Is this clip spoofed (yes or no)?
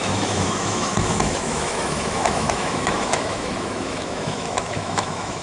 yes